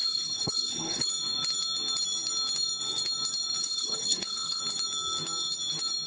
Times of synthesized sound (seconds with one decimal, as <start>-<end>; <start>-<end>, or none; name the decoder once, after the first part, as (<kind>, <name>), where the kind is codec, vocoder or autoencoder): 0.0-1.1 (codec, HILCodec); 3.6-4.6

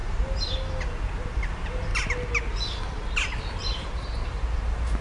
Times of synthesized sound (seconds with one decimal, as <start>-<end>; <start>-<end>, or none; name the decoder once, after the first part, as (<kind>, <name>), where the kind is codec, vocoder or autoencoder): 1.3-1.9 (vocoder, BigVGAN v2); 3.4-5.0